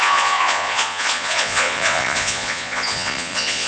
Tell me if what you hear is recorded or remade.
remade